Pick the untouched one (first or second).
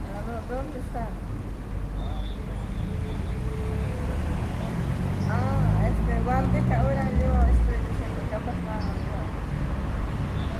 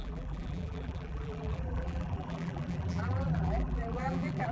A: first